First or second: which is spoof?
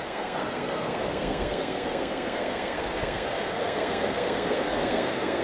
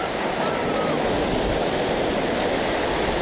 first